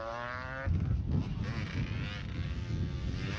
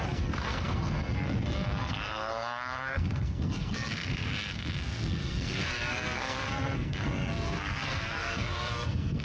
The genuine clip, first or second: first